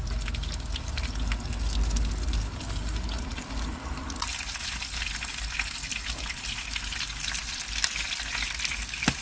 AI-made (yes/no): no